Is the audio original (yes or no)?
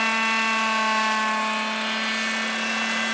yes